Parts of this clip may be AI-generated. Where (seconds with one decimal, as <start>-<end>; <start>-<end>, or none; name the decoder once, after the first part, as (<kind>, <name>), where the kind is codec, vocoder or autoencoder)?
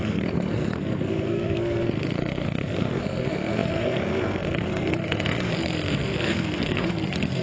0.0-7.4 (codec, SNAC)